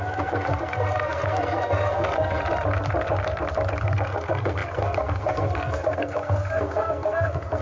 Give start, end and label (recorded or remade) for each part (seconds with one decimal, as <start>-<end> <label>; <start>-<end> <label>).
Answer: 0.0-2.4 remade; 2.4-3.8 recorded; 3.8-7.6 remade